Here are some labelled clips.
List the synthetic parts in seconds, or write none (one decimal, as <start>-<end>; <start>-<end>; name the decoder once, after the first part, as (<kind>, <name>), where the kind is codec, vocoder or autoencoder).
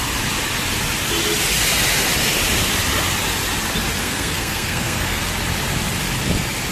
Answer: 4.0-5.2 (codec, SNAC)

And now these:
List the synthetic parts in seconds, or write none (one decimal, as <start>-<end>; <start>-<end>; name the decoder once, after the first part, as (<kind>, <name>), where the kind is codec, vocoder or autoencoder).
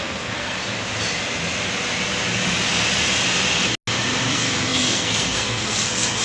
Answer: 0.0-0.6 (codec, SNAC); 4.3-6.2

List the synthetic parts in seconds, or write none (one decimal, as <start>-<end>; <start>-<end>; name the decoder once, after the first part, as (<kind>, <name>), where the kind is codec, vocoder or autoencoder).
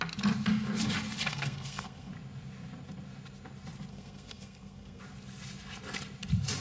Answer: 1.3-2.1 (codec, SNAC); 3.9-5.0